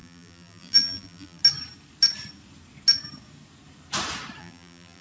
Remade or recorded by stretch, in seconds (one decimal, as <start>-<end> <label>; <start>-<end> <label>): 0.0-1.4 remade; 1.4-4.4 recorded; 4.4-5.0 remade

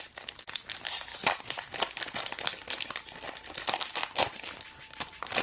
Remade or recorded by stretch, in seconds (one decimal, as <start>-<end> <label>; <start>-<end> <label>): 0.0-5.4 recorded

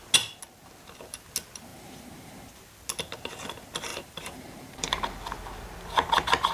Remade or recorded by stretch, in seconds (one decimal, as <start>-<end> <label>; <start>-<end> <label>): 0.0-1.7 recorded; 1.7-2.5 remade; 2.5-3.9 recorded; 3.9-4.9 remade; 4.9-6.5 recorded

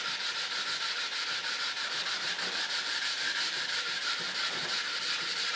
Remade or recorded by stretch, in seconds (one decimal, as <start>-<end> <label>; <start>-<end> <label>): 0.0-1.4 recorded; 1.4-4.8 remade; 4.8-5.6 recorded

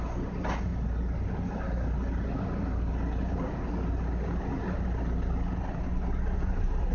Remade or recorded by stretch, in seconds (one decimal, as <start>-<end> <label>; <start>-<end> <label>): 0.0-6.9 recorded